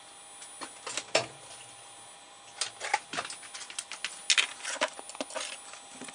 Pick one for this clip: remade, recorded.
recorded